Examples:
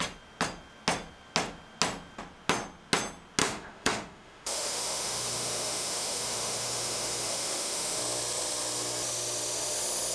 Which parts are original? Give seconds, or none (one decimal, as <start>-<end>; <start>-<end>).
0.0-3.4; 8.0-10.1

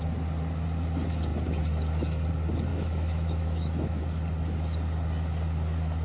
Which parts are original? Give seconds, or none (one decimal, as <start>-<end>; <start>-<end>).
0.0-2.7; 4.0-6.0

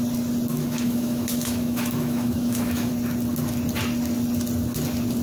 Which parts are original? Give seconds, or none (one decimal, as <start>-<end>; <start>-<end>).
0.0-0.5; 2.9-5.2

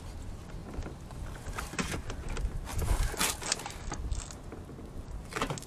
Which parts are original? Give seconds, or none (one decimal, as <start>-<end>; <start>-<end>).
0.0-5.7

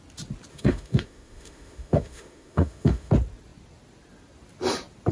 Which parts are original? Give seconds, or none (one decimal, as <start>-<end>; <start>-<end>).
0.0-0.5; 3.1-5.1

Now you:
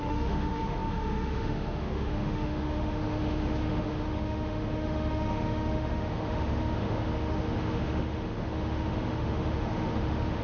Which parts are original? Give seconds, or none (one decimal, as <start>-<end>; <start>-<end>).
none

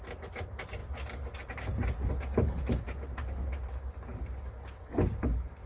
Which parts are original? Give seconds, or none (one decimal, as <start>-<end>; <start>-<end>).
0.0-5.7